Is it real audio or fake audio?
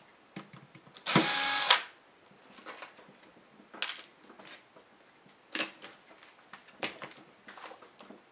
real